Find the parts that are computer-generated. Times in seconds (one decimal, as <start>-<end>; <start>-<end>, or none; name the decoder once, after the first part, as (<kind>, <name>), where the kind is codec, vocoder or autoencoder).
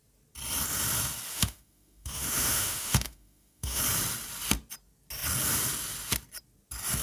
1.3-3.8 (autoencoder, DAC-VAE)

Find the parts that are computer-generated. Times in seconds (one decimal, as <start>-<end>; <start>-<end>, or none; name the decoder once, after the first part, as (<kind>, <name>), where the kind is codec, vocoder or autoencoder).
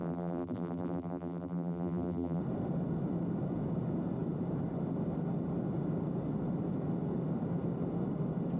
0.0-2.4 (vocoder, BigVGAN v2)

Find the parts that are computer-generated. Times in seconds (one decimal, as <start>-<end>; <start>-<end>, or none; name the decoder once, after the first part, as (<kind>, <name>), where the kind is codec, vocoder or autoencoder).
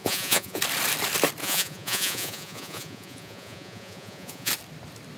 0.0-0.6 (vocoder, Vocos); 1.4-4.5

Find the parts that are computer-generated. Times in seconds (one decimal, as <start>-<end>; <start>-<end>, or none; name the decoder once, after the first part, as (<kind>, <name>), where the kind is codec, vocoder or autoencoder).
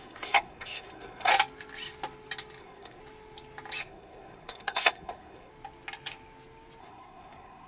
0.0-1.3 (codec, SNAC); 2.6-3.0; 3.8-5.5; 6.8-7.7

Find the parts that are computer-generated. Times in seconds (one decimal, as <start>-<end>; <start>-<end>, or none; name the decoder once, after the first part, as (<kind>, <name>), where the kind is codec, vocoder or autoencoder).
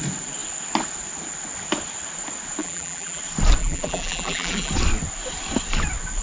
2.6-3.2 (vocoder, BigVGAN v2); 3.6-4.7